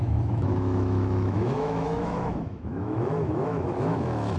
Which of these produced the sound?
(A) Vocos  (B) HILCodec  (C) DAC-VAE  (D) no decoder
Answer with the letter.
C